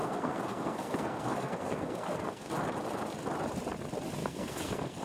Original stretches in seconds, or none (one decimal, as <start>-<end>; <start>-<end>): 2.5-4.2